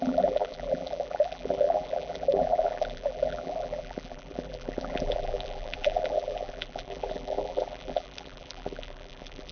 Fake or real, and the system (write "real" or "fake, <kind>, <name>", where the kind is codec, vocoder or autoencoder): fake, vocoder, BigVGAN v2